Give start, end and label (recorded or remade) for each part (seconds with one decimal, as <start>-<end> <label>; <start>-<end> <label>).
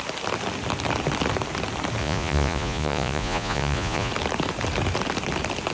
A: 0.0-2.0 recorded; 2.0-4.1 remade; 4.1-5.7 recorded